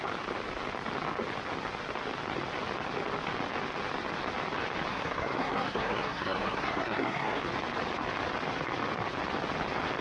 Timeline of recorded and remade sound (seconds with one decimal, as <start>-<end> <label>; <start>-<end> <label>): 0.0-4.9 recorded; 4.9-7.4 remade; 7.4-10.0 recorded